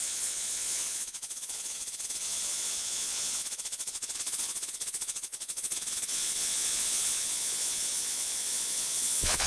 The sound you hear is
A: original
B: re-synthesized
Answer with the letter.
B